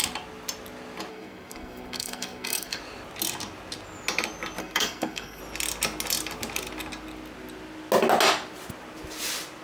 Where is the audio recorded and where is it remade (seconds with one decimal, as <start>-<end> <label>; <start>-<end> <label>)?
0.0-1.1 recorded; 1.1-2.8 remade; 2.8-4.6 recorded; 4.6-5.4 remade; 5.4-9.6 recorded